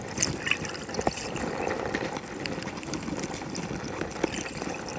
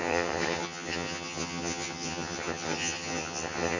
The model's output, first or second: second